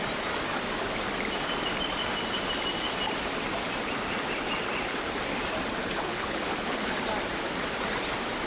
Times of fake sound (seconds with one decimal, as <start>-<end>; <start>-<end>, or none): 5.8-6.9